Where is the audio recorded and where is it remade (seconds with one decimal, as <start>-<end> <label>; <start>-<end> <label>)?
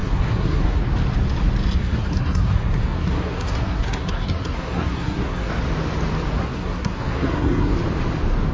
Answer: 0.0-0.8 remade; 0.8-1.8 recorded; 1.8-5.5 remade; 5.5-6.4 recorded; 6.4-7.7 remade; 7.7-8.5 recorded